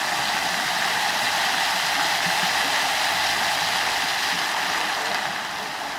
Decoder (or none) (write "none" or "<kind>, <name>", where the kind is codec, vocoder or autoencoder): none